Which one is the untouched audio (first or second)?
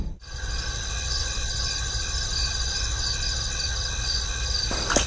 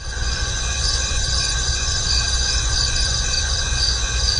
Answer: first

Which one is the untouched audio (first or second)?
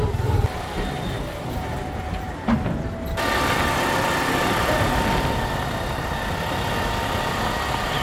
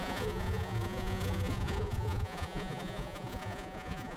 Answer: first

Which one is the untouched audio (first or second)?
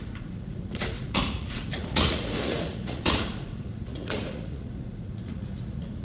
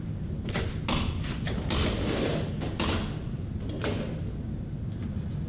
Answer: second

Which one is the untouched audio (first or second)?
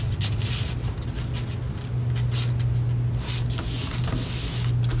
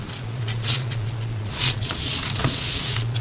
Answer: first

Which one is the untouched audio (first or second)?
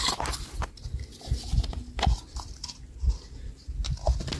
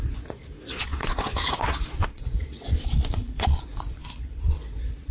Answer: first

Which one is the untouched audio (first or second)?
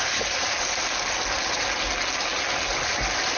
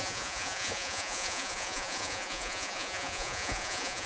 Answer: first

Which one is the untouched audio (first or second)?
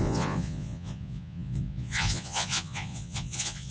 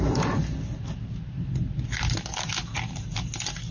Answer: second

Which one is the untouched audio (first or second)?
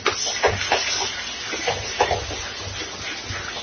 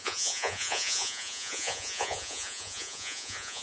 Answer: first